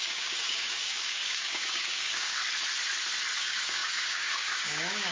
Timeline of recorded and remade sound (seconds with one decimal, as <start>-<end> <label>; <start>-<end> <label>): 0.0-2.4 remade; 2.4-3.4 recorded; 3.4-5.1 remade